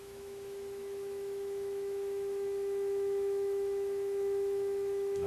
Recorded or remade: remade